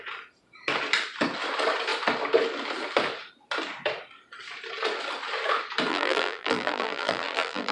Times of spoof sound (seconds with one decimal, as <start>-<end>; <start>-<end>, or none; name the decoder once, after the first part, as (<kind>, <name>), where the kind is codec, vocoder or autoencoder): 5.9-7.7 (vocoder, BigVGAN v2)